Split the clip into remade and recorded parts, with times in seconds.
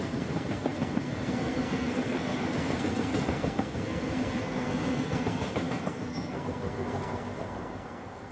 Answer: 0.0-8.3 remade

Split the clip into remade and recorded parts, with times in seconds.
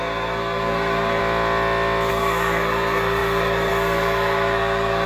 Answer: 0.0-1.2 remade; 1.2-2.1 recorded; 2.1-5.1 remade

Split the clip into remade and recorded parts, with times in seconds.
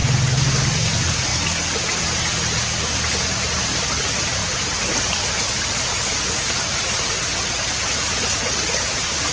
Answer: 0.0-9.3 recorded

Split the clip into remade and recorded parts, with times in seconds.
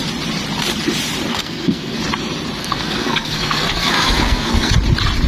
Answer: 0.0-1.3 recorded; 1.3-2.0 remade; 2.0-2.6 recorded; 2.6-4.7 remade; 4.7-5.3 recorded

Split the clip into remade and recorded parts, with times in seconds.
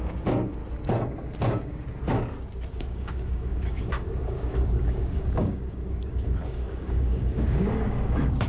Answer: 0.0-0.6 remade; 0.6-1.4 recorded; 1.4-1.9 remade; 1.9-2.7 recorded; 2.7-8.5 remade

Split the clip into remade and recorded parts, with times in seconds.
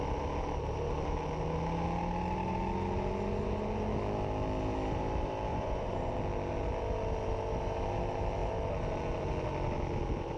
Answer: 0.0-5.5 recorded; 5.5-6.1 remade; 6.1-10.4 recorded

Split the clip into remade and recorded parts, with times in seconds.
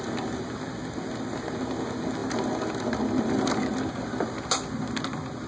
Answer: 0.0-5.5 recorded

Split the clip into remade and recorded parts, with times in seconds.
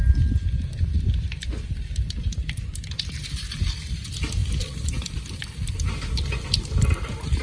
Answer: 0.0-7.4 recorded